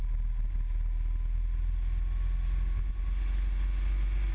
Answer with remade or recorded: recorded